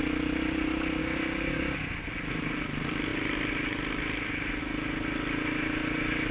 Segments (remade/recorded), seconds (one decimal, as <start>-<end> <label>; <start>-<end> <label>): 0.0-1.0 recorded; 1.0-2.0 remade; 2.0-6.3 recorded